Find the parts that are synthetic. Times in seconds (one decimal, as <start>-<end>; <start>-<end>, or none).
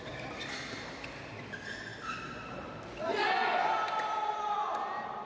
none